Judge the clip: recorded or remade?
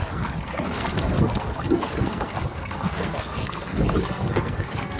remade